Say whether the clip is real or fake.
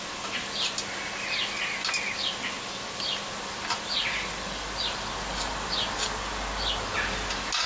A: real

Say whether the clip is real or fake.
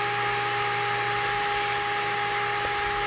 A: real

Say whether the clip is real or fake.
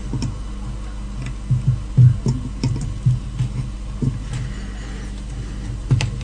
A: real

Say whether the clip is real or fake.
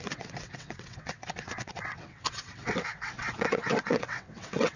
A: fake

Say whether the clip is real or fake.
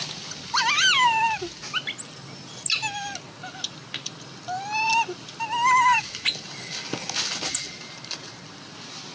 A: real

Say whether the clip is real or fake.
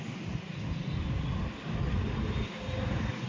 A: real